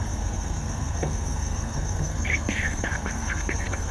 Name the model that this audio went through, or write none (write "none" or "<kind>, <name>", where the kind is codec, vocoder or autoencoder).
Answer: codec, SNAC